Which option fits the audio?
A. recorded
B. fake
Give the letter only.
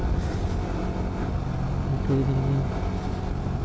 A